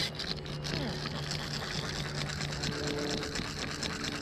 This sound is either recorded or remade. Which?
recorded